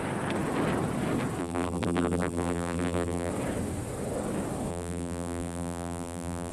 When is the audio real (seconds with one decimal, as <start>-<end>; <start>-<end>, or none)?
0.0-1.4; 3.3-4.7